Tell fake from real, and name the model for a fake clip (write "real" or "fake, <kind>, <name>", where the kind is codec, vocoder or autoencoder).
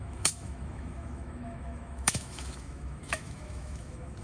fake, autoencoder, DAC-VAE